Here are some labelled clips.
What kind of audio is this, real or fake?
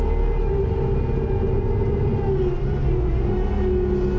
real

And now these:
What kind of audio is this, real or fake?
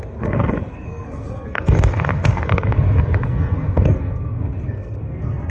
fake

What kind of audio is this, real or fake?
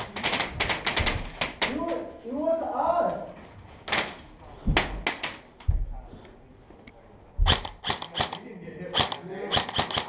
real